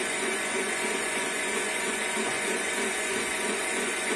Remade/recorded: remade